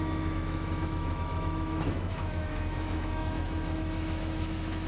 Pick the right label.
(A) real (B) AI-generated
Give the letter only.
B